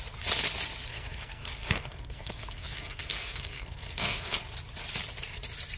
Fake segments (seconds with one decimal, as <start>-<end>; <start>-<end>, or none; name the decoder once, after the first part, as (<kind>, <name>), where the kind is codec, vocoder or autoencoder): 0.9-4.4 (codec, SNAC)